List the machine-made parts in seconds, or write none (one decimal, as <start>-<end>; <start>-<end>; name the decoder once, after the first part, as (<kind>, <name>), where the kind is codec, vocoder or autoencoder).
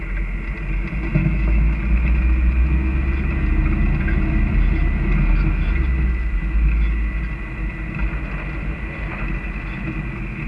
1.2-1.8 (autoencoder, DAC-VAE)